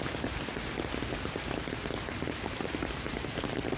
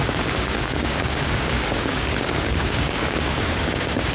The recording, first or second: first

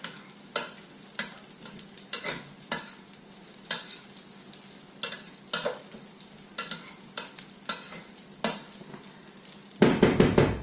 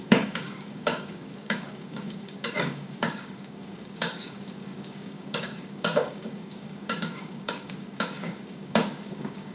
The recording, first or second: first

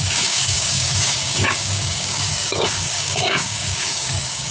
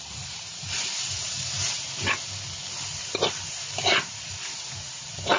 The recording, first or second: second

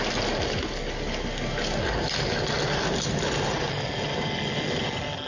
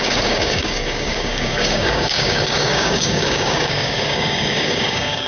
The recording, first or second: first